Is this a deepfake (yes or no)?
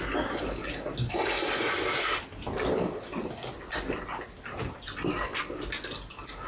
no